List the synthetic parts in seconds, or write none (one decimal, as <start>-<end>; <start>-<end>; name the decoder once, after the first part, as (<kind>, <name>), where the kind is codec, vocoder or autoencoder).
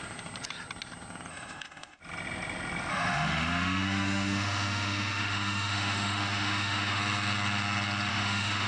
1.3-2.0 (autoencoder, DAC-VAE); 2.9-7.0; 8.1-8.7